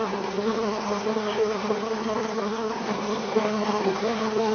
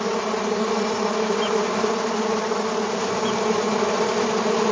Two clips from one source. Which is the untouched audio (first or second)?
second